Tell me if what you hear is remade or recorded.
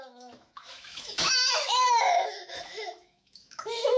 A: remade